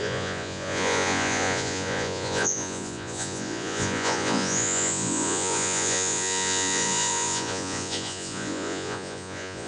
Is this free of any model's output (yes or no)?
no